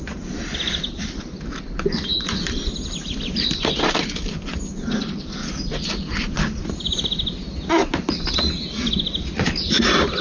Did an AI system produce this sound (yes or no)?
no